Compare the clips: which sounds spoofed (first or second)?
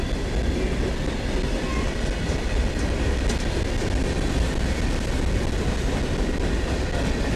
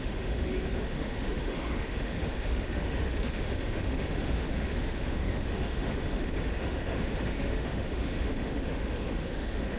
second